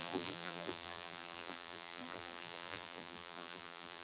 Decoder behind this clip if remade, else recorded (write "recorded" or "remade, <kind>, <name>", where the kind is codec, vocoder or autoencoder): remade, vocoder, BigVGAN v2